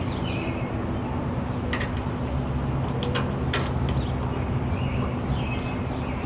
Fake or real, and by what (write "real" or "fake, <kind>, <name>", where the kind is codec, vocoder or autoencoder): real